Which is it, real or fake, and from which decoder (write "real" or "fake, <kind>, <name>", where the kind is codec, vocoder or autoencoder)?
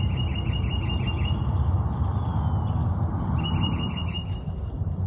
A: real